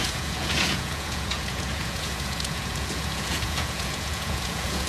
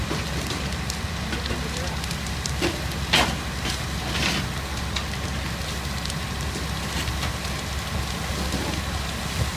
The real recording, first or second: second